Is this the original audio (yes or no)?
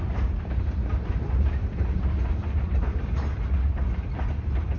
no